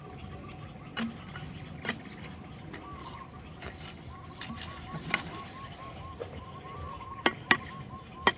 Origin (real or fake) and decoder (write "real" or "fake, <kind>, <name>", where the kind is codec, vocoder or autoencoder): real